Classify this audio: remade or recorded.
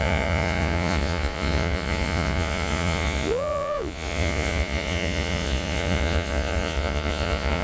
remade